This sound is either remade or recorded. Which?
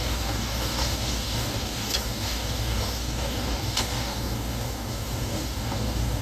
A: remade